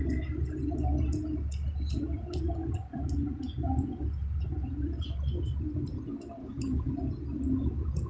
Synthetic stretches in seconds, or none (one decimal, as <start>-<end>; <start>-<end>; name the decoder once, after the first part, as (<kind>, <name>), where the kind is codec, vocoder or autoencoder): 6.4-6.9 (codec, DAC)